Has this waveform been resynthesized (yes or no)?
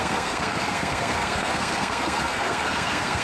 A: yes